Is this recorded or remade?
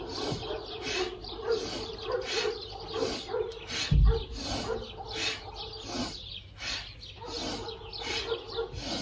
recorded